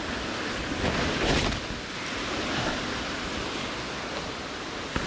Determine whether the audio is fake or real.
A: real